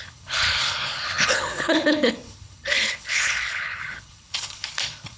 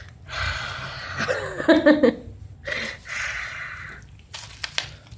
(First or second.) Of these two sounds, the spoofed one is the first